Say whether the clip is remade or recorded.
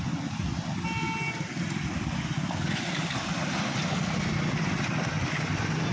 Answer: recorded